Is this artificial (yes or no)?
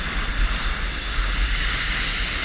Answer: no